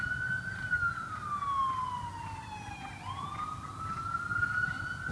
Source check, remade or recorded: recorded